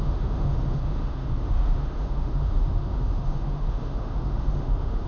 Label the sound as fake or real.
fake